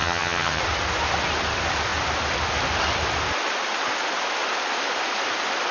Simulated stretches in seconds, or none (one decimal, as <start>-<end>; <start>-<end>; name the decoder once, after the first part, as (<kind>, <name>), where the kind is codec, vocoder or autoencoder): 0.0-0.6 (vocoder, HiFi-GAN)